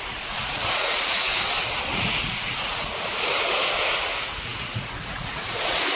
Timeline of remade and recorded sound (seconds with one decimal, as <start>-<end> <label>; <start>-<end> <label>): 0.0-1.3 remade; 1.3-1.9 recorded; 1.9-2.9 remade; 2.9-4.0 recorded; 4.0-6.0 remade